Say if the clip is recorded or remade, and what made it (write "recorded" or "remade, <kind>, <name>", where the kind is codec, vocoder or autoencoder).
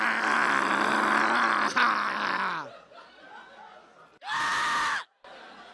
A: recorded